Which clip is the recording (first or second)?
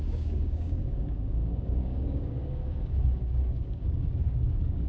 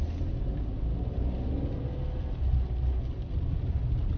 second